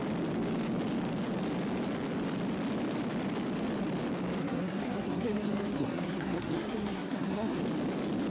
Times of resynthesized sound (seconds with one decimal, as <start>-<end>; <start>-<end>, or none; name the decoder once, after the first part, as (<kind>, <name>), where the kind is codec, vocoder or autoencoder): 4.4-7.6 (codec, SNAC)